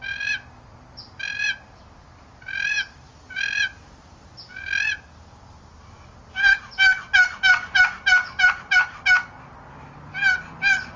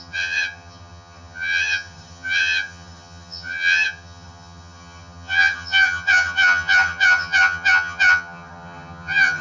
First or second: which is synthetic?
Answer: second